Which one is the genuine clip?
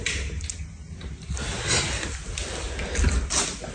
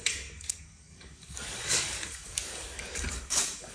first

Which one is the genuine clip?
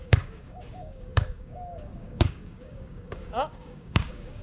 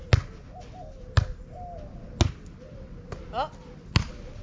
second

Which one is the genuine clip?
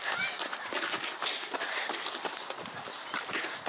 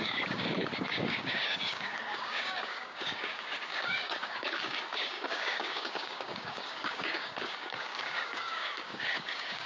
first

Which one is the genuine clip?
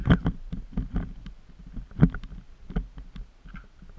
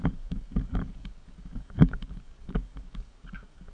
first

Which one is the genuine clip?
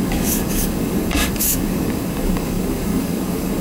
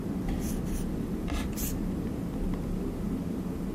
second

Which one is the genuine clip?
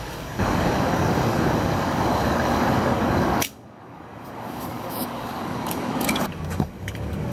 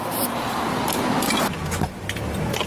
second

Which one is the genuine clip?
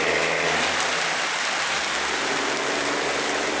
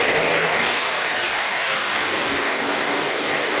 first